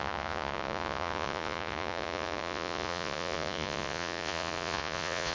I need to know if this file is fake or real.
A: fake